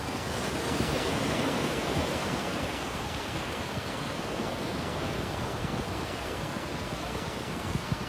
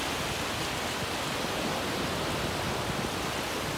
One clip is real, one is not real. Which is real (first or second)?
second